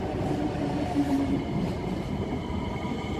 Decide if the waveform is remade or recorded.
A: remade